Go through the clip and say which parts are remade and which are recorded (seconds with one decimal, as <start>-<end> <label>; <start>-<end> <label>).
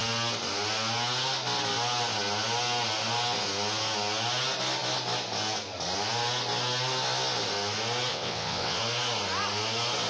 0.0-8.1 recorded; 8.1-8.8 remade; 8.8-10.1 recorded